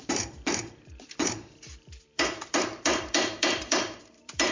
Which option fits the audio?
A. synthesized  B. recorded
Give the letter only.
A